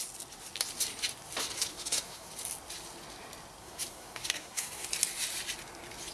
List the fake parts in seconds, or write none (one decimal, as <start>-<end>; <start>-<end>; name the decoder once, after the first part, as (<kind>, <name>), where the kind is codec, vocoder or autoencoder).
1.7-2.3 (codec, SNAC); 3.6-4.9